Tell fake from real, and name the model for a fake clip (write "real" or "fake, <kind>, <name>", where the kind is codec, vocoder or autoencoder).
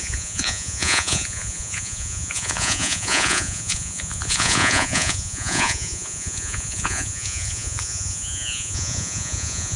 fake, vocoder, Vocos